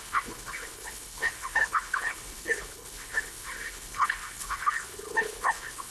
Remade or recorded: remade